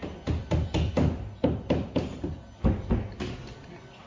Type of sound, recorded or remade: recorded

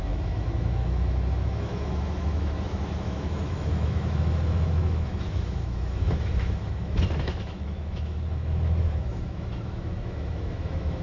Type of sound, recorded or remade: remade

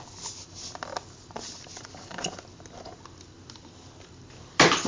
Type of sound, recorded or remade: recorded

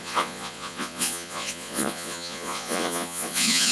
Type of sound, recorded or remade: remade